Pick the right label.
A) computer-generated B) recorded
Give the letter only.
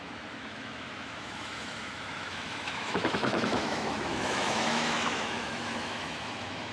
A